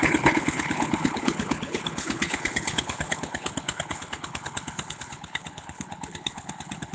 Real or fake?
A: fake